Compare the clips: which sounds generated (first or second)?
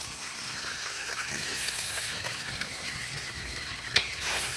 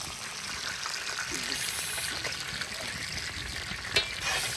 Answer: first